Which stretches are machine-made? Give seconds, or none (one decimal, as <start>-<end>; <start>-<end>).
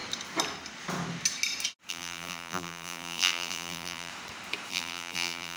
1.9-4.1; 4.7-5.6